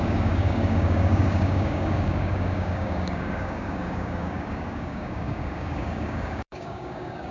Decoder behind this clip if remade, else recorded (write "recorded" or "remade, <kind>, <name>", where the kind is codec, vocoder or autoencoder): remade, codec, DAC